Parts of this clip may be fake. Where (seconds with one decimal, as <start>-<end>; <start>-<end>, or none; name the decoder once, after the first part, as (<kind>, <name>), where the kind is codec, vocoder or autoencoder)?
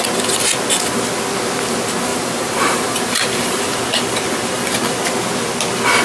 2.1-3.8 (vocoder, BigVGAN v2)